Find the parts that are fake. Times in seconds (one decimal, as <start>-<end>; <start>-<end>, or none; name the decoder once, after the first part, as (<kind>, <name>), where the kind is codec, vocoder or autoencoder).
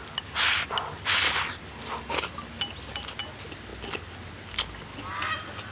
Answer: none